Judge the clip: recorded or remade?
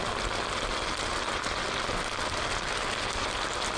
recorded